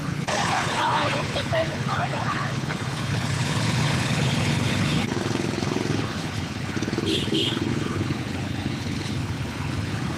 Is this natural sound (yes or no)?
no